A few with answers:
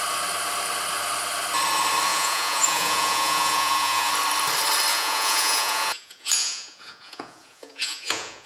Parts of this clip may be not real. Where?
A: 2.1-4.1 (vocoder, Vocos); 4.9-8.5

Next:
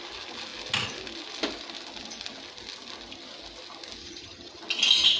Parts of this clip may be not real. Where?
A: 4.0-4.6 (vocoder, HiFi-GAN)

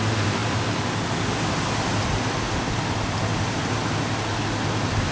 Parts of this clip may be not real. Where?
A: none

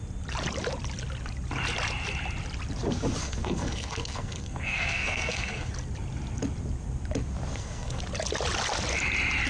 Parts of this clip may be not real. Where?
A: 3.2-5.7 (codec, SNAC); 7.5-8.0

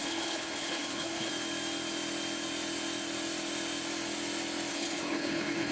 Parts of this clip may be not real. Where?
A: 0.0-1.3 (codec, HILCodec); 4.7-5.7

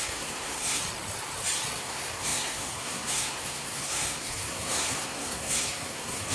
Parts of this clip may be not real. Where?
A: 0.0-0.8 (codec, SNAC); 1.8-6.3

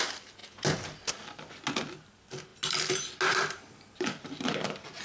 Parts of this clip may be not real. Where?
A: none